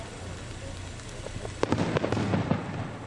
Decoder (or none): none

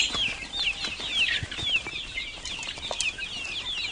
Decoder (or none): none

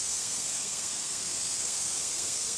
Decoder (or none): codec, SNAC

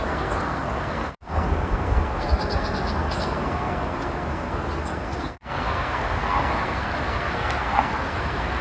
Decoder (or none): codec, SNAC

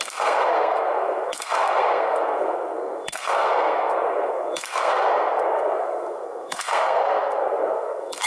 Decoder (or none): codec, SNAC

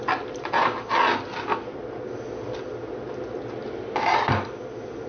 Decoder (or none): none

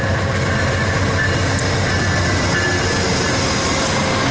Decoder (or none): none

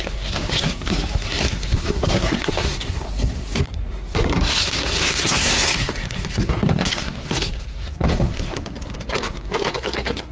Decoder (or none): codec, SNAC